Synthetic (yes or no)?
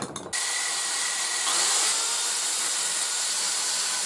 no